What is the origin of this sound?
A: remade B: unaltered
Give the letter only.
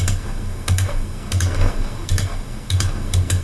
A